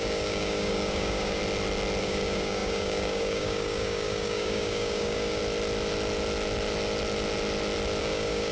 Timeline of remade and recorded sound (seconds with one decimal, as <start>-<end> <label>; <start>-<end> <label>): 0.0-1.4 remade; 1.4-2.0 recorded; 2.0-5.4 remade; 5.4-8.0 recorded; 8.0-8.5 remade